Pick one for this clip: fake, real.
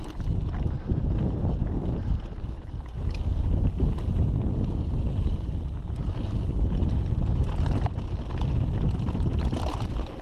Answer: real